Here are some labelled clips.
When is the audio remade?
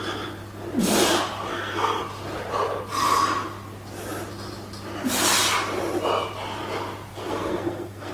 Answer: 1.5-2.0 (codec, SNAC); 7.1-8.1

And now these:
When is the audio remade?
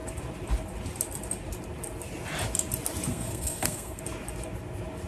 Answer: 3.1-4.0 (codec, SNAC)